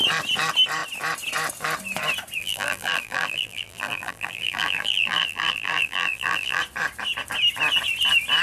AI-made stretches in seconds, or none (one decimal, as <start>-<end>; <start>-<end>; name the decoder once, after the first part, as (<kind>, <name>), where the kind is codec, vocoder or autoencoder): 2.4-6.6 (vocoder, BigVGAN v2)